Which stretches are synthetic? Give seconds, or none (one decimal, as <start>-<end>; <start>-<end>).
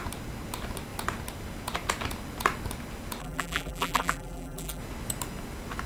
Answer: 3.2-4.8